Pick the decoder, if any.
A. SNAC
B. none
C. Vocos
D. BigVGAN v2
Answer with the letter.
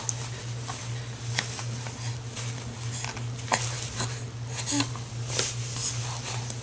B